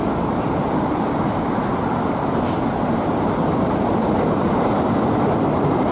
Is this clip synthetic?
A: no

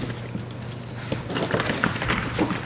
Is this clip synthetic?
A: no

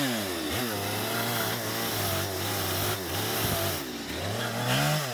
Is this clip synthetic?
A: no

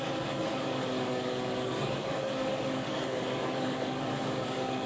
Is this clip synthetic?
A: yes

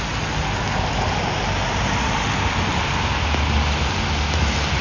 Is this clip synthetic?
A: no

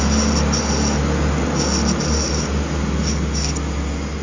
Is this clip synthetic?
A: no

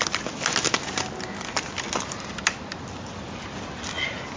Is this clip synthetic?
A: no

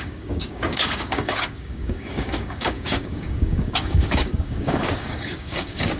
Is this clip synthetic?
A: yes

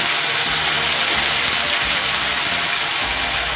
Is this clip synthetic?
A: no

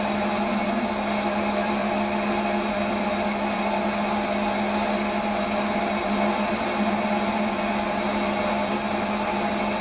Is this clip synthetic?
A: no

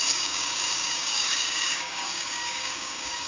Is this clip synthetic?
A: yes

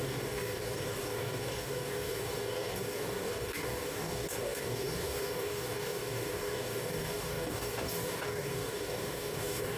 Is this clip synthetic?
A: yes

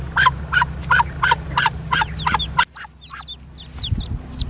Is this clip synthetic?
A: no